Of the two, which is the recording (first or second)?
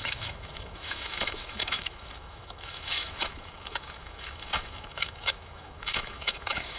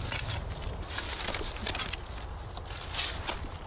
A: second